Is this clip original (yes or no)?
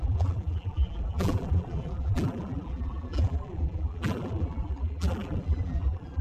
no